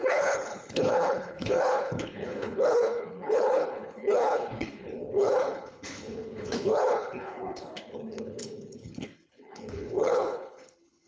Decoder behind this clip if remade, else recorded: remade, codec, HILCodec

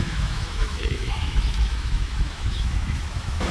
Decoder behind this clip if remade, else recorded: remade, autoencoder, DAC-VAE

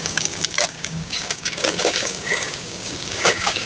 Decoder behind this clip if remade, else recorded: remade, codec, DAC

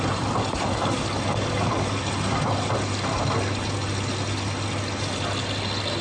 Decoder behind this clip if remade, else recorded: recorded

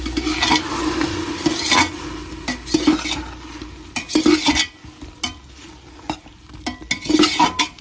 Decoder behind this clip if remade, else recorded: recorded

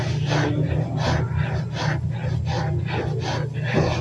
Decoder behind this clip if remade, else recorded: recorded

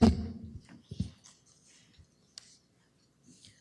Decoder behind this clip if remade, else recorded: recorded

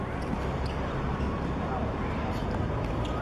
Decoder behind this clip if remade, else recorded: remade, vocoder, BigVGAN v2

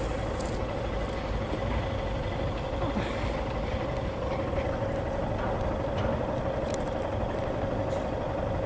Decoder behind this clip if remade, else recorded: recorded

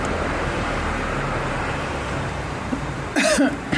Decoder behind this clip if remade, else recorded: remade, vocoder, BigVGAN v2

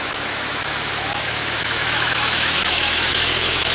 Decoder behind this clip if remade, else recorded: remade, autoencoder, DAC-VAE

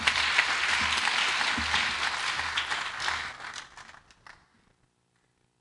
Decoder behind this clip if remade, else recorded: recorded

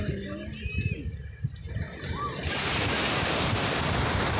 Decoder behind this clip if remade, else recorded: recorded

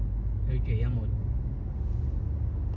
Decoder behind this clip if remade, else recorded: recorded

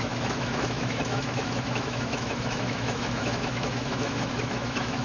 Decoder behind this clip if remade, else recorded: remade, autoencoder, DAC-VAE